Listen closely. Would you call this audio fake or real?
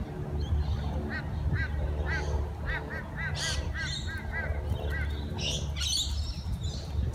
real